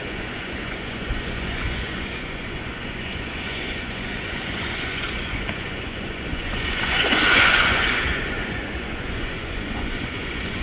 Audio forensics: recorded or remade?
remade